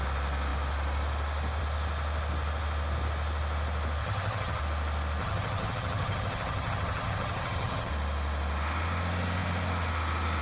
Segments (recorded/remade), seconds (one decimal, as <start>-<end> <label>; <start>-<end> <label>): 0.0-4.0 recorded; 4.0-4.6 remade; 4.6-5.2 recorded; 5.2-7.9 remade; 7.9-10.4 recorded